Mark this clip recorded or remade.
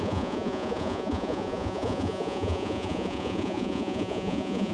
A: remade